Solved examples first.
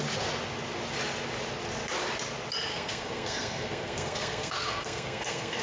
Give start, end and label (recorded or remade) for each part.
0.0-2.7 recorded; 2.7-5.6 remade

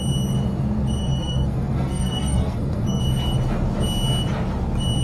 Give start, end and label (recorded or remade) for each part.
0.0-1.0 recorded; 1.0-3.0 remade; 3.0-5.0 recorded